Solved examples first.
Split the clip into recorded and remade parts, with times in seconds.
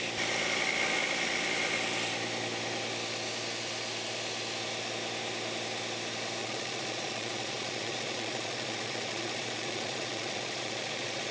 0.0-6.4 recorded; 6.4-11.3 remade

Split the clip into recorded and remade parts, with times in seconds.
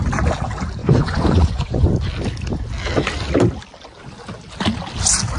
0.0-0.8 recorded; 0.8-1.9 remade; 1.9-5.4 recorded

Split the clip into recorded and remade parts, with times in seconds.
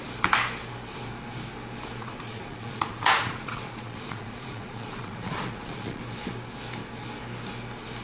0.0-2.0 recorded; 2.0-6.0 remade; 6.0-8.0 recorded